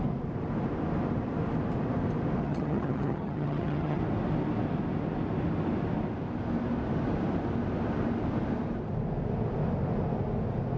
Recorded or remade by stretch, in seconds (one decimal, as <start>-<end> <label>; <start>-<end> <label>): 0.0-2.4 recorded; 2.4-4.0 remade; 4.0-10.8 recorded